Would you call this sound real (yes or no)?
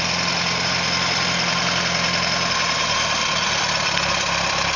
yes